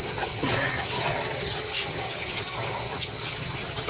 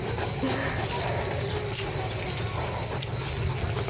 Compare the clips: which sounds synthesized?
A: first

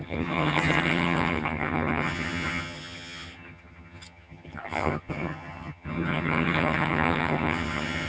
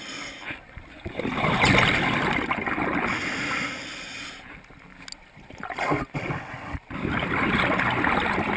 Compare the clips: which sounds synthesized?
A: first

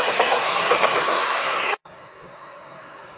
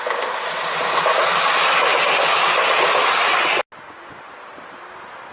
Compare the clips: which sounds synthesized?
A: first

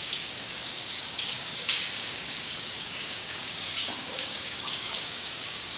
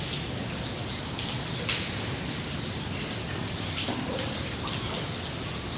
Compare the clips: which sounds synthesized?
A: first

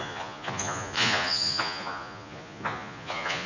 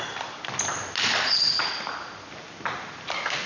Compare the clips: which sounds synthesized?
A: first